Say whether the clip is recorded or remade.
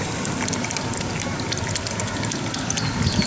recorded